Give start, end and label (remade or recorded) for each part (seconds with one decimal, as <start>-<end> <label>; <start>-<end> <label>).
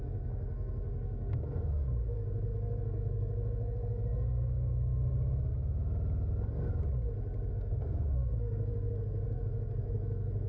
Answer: 0.0-5.1 remade; 5.1-7.5 recorded; 7.5-10.5 remade